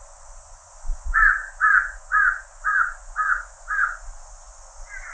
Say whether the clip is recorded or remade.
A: remade